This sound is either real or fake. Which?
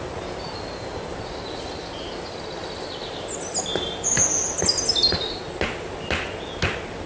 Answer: real